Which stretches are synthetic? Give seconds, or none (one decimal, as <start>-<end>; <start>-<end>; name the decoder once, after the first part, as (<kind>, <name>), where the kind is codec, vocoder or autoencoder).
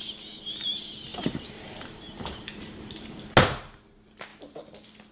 1.1-3.2 (vocoder, BigVGAN v2)